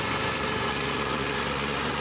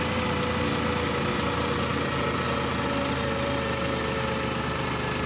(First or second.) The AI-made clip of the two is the first